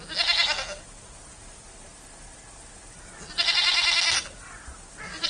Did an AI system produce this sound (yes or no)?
no